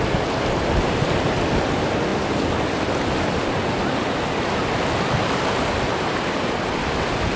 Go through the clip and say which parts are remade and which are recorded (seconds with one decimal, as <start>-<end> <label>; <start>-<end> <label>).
0.0-7.4 recorded